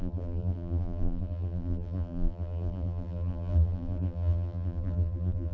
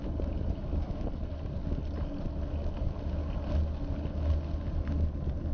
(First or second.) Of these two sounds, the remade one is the first